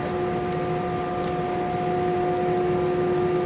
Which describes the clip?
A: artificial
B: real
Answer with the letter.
B